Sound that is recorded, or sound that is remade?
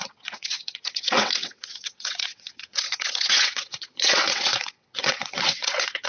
remade